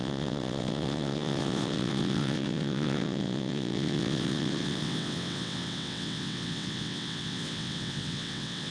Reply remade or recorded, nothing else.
remade